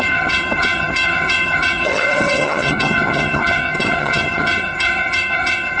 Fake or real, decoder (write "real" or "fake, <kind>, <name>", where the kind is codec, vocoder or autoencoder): fake, vocoder, HiFi-GAN